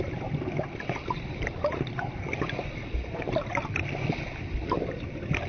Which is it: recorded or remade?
recorded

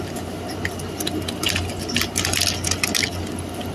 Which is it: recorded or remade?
recorded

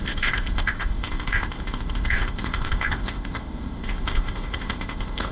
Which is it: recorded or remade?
remade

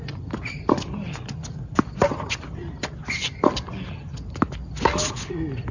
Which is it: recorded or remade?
recorded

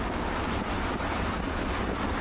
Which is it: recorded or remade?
recorded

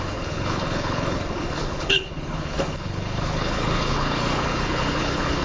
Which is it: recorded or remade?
remade